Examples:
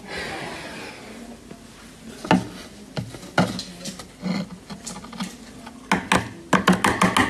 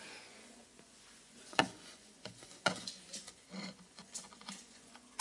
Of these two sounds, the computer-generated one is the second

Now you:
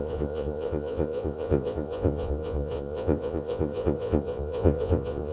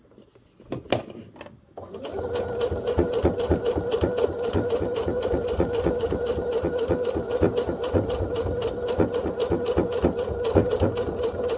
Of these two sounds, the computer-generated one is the first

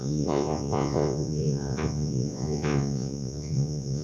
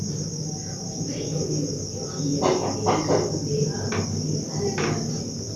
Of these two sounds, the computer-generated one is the first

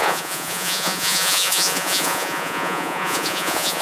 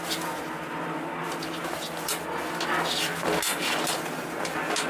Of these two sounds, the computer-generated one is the first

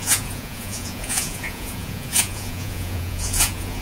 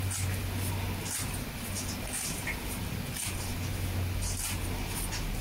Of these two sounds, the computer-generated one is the first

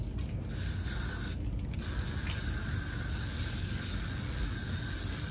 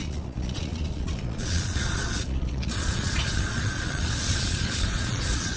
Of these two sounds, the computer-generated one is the second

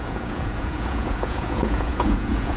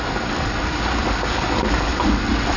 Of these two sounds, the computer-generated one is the first